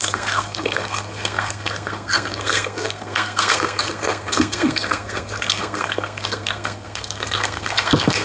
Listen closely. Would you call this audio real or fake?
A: fake